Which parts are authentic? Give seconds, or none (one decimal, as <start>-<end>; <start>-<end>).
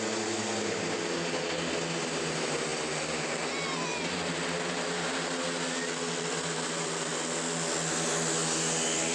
0.0-9.1